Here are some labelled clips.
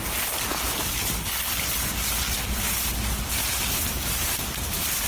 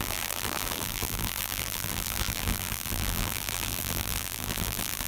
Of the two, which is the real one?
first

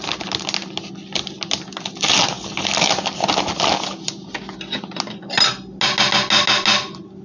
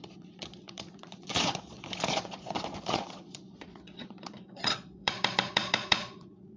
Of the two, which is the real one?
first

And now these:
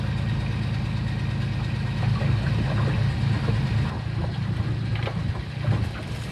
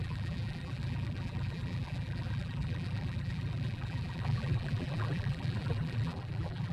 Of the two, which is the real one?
first